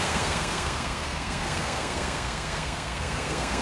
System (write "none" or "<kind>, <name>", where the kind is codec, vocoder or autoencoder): codec, SNAC